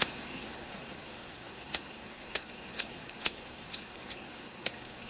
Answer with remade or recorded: remade